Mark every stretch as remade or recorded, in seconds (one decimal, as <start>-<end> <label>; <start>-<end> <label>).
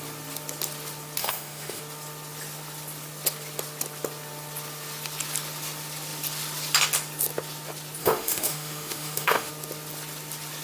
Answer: 0.0-1.2 recorded; 1.2-1.8 remade; 1.8-8.0 recorded; 8.0-9.5 remade; 9.5-10.6 recorded